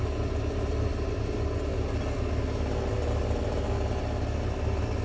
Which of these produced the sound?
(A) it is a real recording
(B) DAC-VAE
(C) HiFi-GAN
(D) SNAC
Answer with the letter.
A